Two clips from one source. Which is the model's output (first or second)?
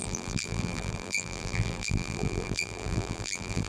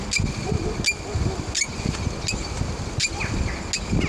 first